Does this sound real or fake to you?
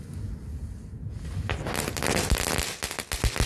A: real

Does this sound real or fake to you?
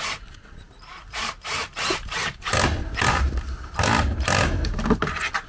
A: real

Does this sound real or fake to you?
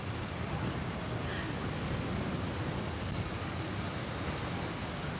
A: real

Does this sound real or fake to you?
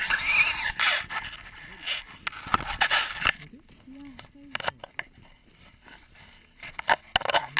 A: real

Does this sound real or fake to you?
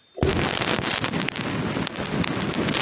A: real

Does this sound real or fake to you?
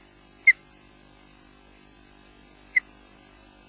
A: real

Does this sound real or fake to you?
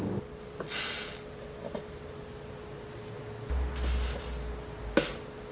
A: real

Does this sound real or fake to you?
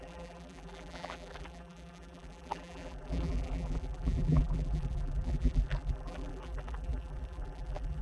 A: fake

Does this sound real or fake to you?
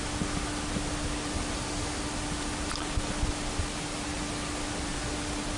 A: real